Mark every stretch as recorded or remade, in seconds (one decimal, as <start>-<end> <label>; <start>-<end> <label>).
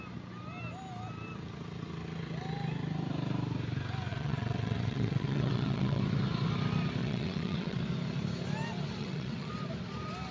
0.0-4.1 recorded; 4.1-6.0 remade; 6.0-7.0 recorded; 7.0-7.8 remade; 7.8-9.0 recorded; 9.0-9.5 remade; 9.5-10.3 recorded